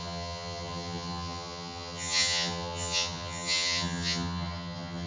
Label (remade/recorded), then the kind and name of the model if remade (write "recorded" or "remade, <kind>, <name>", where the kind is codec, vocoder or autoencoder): remade, vocoder, HiFi-GAN